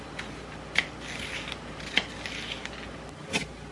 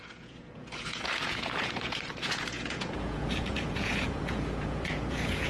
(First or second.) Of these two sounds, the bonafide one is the first